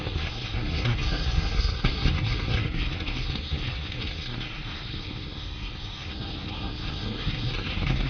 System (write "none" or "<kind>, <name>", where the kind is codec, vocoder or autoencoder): codec, SNAC